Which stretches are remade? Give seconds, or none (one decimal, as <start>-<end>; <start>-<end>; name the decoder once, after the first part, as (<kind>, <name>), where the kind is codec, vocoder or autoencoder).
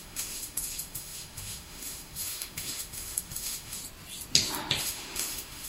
0.0-3.8 (autoencoder, DAC-VAE); 4.8-5.7